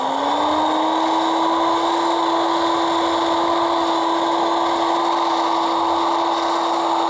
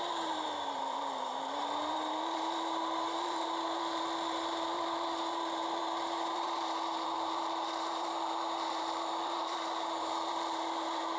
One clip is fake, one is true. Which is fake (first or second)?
second